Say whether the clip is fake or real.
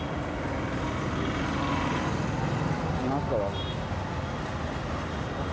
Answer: real